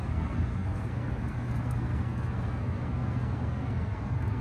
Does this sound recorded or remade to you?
remade